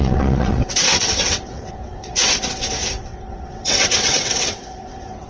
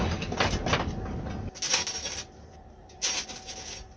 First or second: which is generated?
first